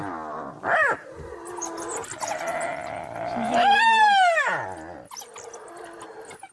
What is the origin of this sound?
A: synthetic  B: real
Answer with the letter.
B